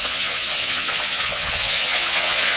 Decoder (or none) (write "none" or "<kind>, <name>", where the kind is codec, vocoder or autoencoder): vocoder, Vocos